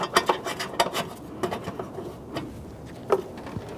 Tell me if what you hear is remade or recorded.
recorded